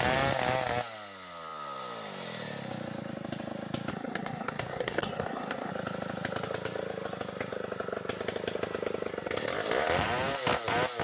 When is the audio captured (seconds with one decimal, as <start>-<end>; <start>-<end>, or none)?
0.0-3.9; 5.7-11.0